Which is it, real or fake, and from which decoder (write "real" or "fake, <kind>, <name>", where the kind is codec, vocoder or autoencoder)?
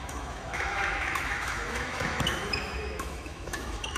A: fake, autoencoder, DAC-VAE